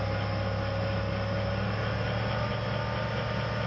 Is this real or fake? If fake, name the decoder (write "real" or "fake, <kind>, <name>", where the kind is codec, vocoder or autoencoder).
real